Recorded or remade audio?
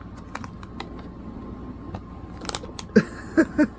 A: recorded